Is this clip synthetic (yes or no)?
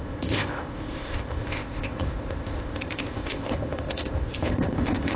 yes